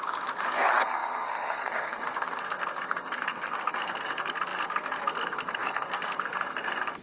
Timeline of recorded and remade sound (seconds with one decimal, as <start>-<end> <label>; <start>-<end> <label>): 0.0-7.0 remade